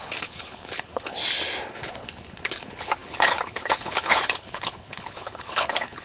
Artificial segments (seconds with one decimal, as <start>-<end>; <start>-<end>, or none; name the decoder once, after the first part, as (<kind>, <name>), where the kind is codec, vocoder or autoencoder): 0.0-1.2 (codec, HILCodec); 1.7-6.0